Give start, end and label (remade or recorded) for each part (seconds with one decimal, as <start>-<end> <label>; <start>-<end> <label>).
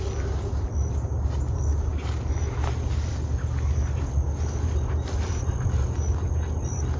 0.0-7.0 recorded